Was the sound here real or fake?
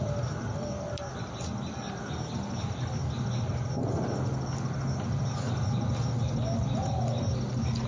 real